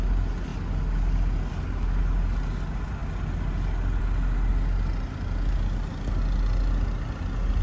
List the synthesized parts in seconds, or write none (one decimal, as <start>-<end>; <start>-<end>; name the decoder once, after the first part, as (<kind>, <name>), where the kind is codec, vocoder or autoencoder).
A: none